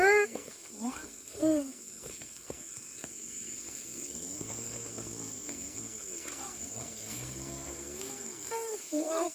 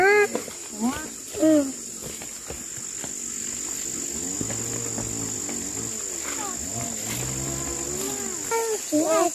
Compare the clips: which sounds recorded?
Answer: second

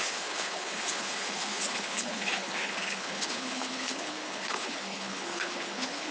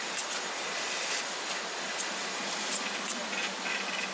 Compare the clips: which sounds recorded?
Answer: second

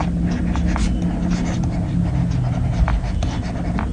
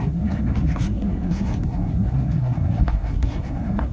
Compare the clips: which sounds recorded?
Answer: first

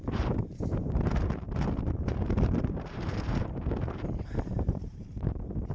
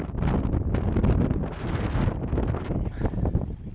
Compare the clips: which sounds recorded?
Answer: second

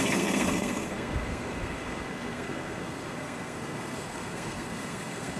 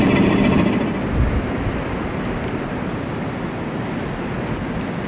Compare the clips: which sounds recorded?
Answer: second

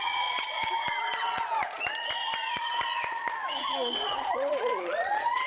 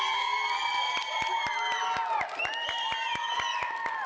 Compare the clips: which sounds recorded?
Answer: second